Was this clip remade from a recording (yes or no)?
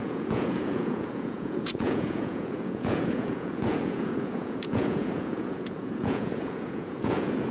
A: yes